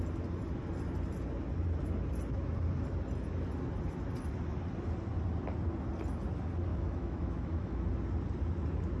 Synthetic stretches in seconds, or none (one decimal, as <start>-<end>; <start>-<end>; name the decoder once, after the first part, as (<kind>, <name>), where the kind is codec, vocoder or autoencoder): 6.7-7.9 (autoencoder, DAC-VAE)